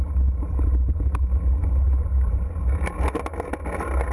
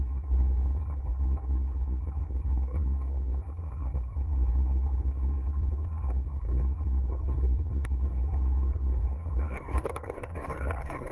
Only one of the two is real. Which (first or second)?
first